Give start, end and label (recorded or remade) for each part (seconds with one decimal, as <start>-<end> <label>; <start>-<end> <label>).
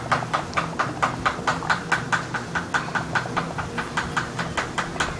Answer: 0.0-5.2 recorded